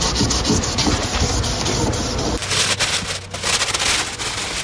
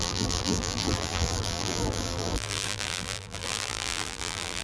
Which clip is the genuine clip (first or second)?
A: first